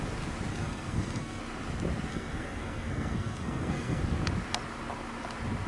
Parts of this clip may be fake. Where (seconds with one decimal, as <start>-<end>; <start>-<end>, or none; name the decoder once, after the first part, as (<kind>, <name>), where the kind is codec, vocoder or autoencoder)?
0.5-1.4 (codec, SNAC); 2.1-4.0